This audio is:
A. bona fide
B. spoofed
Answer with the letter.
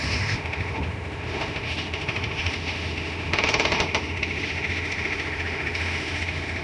B